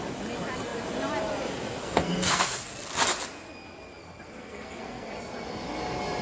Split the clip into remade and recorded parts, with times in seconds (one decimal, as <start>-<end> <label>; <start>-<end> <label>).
0.0-1.8 recorded; 1.8-2.7 remade; 2.7-4.0 recorded; 4.0-5.1 remade; 5.1-6.2 recorded